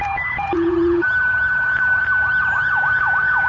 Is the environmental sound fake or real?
fake